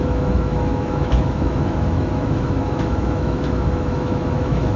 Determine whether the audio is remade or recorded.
remade